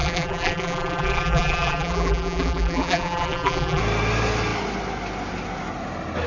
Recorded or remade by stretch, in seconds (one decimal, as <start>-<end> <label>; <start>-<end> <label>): 0.0-3.8 remade; 3.8-6.3 recorded